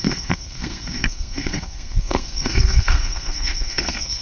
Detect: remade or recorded remade